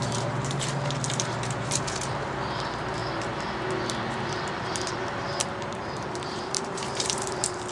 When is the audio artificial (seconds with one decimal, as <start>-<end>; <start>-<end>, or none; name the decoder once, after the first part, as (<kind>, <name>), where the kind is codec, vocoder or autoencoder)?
0.0-3.0 (vocoder, BigVGAN v2); 4.3-7.7

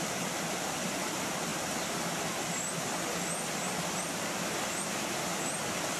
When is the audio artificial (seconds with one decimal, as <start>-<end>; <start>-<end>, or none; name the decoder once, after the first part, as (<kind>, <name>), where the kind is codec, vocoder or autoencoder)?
none

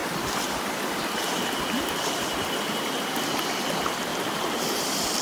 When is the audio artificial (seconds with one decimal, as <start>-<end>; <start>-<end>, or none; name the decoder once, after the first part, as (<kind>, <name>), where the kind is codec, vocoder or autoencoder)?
1.1-5.2 (vocoder, BigVGAN v2)